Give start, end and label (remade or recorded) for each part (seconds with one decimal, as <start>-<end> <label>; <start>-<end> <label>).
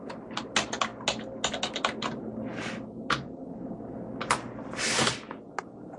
0.0-6.0 recorded